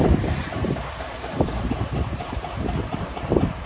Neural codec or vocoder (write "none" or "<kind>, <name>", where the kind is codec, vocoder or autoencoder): vocoder, BigVGAN v2